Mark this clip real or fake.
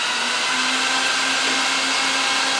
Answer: real